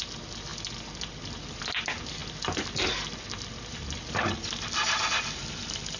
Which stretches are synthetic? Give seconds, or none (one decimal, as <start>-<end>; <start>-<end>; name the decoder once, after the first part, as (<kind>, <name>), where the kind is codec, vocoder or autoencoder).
none